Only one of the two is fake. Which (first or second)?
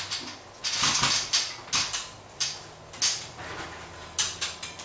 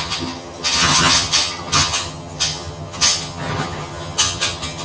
second